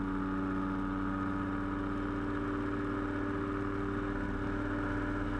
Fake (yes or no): no